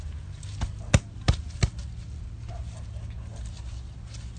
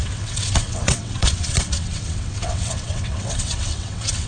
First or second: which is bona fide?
first